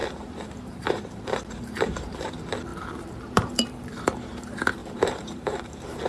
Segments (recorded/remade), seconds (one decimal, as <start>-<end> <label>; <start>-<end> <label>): 0.0-2.3 remade; 2.3-2.7 recorded; 2.7-4.0 remade; 4.0-4.8 recorded; 4.8-6.1 remade